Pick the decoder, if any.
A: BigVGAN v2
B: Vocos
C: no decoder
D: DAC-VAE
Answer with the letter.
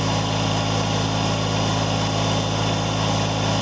C